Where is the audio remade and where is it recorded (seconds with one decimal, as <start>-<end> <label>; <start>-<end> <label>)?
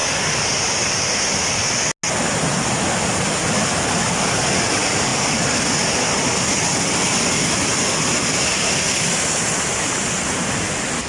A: 0.0-11.1 recorded